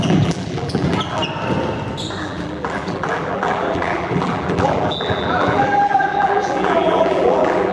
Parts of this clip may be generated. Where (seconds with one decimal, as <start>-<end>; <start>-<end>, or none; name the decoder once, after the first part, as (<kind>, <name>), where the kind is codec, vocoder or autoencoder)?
0.0-1.2 (vocoder, BigVGAN v2); 2.2-7.7